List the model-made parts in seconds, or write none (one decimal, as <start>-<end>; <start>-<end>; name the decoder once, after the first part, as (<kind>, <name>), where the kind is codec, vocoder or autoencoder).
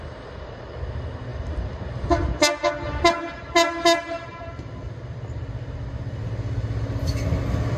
none